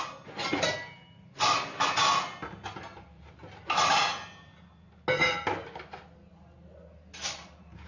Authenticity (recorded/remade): recorded